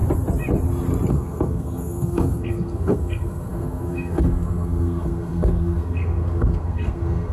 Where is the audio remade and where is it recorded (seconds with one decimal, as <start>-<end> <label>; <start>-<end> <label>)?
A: 0.0-1.1 recorded; 1.1-7.3 remade